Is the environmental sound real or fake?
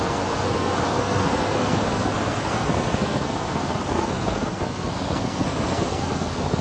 fake